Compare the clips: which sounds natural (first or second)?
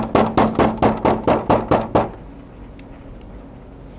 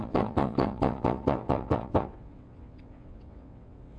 first